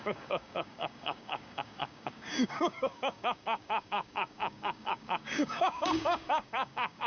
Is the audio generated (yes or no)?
yes